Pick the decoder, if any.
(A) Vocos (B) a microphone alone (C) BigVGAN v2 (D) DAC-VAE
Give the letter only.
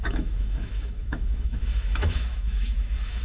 D